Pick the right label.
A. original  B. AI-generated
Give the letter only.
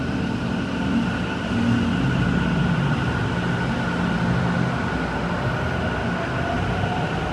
A